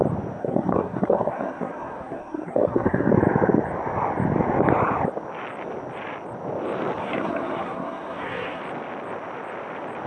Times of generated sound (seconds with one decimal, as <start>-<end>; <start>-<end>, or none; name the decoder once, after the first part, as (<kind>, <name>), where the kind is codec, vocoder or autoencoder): 0.4-3.1 (codec, SNAC); 7.0-8.6